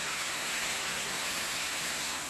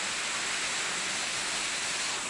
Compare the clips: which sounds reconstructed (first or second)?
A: first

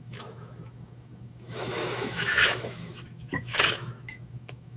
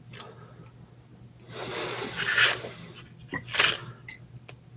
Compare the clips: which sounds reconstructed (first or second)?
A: first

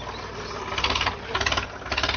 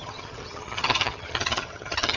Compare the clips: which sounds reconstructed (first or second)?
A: second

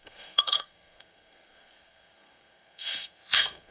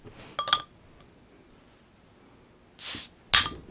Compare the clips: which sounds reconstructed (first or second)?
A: first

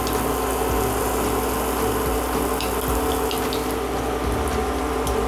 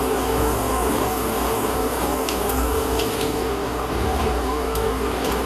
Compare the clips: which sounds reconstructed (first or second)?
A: second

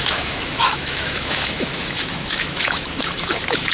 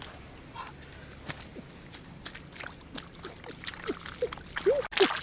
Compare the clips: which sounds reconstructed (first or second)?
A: first